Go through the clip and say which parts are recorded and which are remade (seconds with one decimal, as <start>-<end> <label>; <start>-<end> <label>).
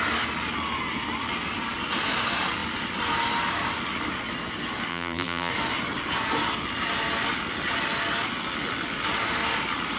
0.0-4.9 recorded; 4.9-5.5 remade; 5.5-10.0 recorded